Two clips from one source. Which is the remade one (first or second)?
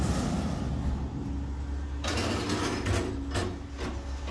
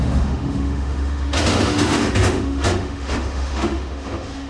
second